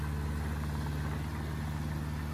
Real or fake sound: real